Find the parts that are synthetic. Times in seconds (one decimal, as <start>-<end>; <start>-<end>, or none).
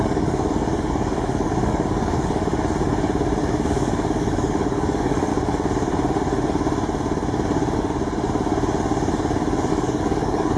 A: 0.0-2.5; 3.5-5.3; 9.7-10.6